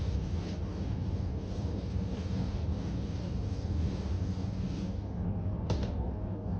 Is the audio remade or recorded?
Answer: remade